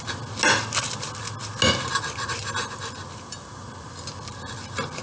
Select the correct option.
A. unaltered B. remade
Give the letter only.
A